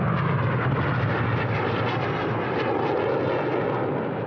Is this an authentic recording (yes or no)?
yes